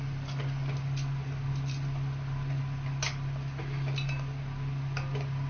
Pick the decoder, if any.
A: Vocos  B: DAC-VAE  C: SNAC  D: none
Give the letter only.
D